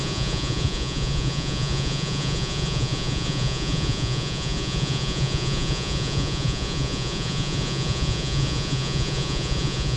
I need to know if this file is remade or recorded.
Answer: remade